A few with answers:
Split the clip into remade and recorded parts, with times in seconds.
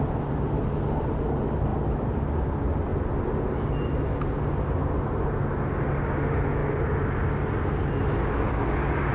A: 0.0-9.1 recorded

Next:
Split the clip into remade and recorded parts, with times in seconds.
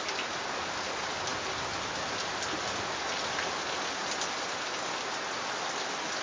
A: 0.0-6.2 recorded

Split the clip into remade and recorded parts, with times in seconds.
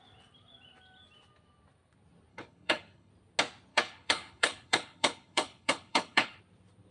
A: 0.0-2.3 recorded; 2.3-3.1 remade; 3.1-3.7 recorded; 3.7-6.4 remade; 6.4-6.9 recorded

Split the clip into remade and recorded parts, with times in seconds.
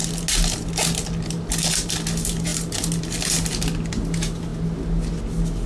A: 0.0-5.7 recorded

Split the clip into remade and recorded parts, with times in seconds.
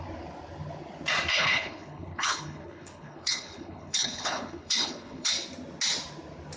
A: 0.0-1.3 recorded; 1.3-5.3 remade; 5.3-6.6 recorded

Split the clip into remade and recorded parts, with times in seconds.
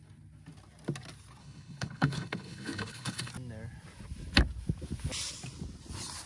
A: 0.0-1.4 recorded; 1.4-3.3 remade; 3.3-6.3 recorded